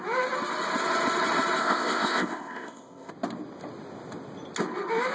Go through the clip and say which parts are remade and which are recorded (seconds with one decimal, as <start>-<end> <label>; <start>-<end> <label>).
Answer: 0.0-1.6 recorded; 1.6-3.1 remade; 3.1-5.1 recorded